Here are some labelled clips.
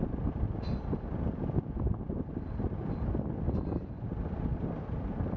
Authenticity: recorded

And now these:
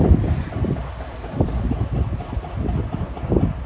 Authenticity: recorded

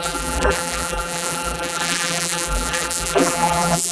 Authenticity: remade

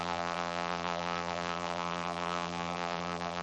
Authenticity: remade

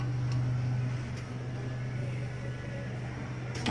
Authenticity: recorded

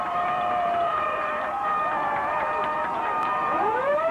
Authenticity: remade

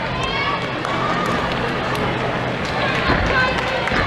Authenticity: recorded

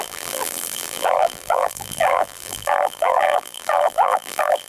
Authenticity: remade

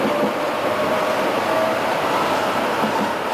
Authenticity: remade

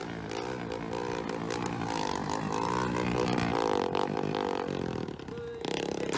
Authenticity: recorded